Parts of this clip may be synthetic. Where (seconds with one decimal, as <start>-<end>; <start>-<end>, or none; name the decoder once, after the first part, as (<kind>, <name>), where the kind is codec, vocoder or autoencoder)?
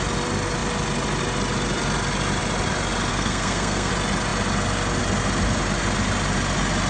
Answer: 3.1-3.9 (codec, SNAC)